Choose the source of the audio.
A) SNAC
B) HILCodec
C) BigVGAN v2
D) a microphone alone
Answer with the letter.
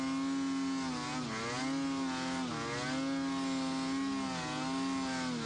D